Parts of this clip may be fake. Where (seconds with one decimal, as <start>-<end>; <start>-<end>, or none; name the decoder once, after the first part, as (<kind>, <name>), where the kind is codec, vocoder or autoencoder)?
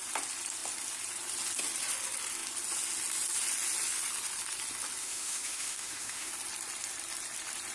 5.0-6.3 (autoencoder, DAC-VAE)